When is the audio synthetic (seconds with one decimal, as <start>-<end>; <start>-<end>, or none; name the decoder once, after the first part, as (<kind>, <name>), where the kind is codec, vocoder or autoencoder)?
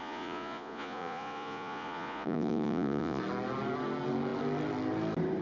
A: 0.0-3.2 (vocoder, Vocos)